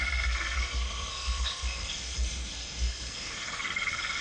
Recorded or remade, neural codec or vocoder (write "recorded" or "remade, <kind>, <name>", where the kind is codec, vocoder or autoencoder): remade, codec, SNAC